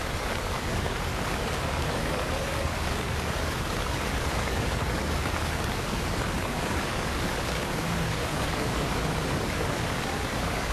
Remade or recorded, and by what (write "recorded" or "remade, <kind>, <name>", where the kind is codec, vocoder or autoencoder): remade, codec, DAC